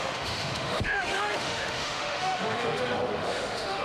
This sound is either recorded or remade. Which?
remade